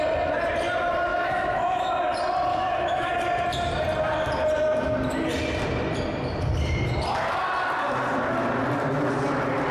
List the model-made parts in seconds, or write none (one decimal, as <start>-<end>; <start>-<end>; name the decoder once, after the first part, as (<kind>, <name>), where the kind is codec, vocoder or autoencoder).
1.1-1.9 (autoencoder, DAC-VAE); 2.5-3.1